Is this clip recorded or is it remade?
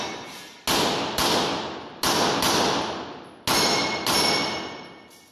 recorded